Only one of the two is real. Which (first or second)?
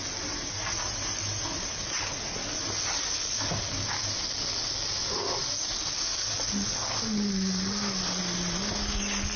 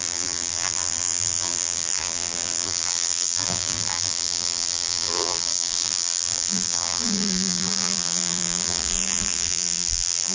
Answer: first